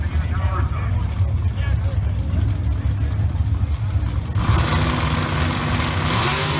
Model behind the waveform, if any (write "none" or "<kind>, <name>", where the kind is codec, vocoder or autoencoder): none